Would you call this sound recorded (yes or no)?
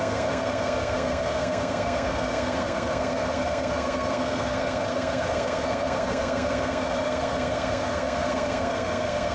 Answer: no